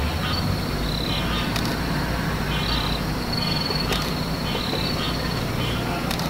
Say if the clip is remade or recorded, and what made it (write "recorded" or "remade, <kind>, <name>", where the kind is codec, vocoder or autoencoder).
recorded